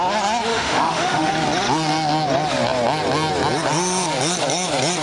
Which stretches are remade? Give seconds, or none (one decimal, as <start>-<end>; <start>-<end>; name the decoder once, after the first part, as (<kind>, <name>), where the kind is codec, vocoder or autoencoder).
0.5-1.3 (autoencoder, DAC-VAE)